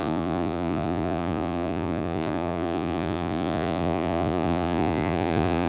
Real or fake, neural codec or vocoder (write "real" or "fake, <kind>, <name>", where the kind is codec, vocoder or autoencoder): fake, vocoder, Vocos